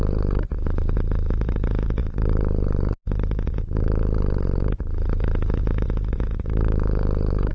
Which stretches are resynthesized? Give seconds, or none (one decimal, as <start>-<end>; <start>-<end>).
0.0-7.5